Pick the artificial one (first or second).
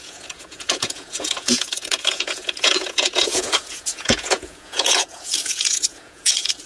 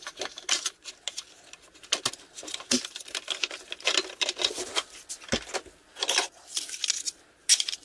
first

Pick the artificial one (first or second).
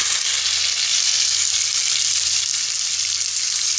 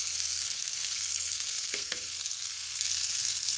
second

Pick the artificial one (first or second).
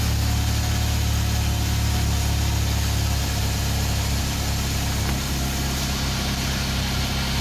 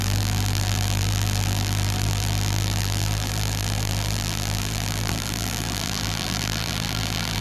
second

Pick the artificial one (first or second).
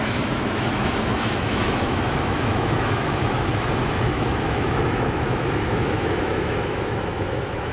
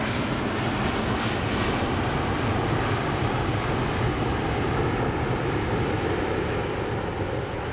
first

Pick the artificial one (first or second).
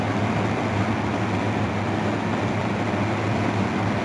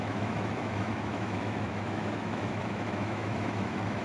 second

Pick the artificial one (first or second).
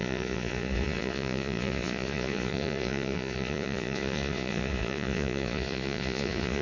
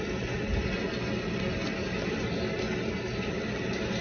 first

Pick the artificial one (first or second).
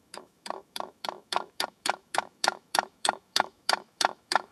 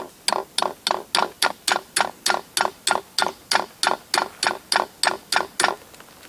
first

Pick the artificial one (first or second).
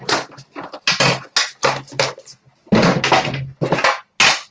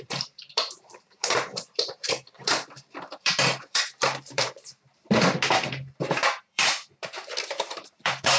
second